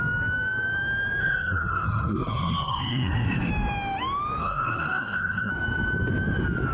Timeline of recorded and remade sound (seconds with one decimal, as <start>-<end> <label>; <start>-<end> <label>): 0.0-1.2 recorded; 1.2-3.5 remade; 3.5-4.4 recorded; 4.4-5.5 remade; 5.5-6.7 recorded